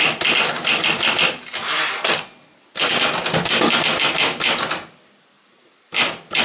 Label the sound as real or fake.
real